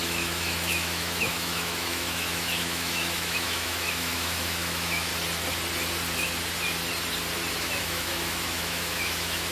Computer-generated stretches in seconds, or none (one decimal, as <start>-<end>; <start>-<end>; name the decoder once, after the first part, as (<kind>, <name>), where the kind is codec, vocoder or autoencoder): 0.0-5.1 (autoencoder, DAC-VAE); 7.5-9.5